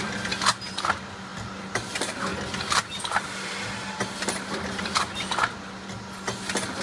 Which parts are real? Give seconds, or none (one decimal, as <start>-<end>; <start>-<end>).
0.0-6.8